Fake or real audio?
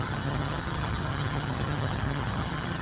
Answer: fake